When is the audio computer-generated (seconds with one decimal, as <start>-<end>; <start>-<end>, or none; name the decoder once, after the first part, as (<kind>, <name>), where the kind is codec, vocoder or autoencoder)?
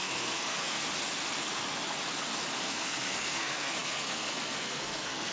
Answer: 0.0-0.8 (codec, SNAC); 2.6-5.3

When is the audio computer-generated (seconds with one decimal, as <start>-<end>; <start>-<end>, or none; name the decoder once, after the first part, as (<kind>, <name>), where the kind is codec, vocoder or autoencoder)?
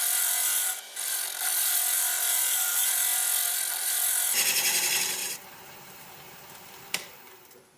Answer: 5.2-7.8 (vocoder, BigVGAN v2)